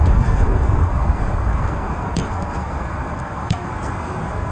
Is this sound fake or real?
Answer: fake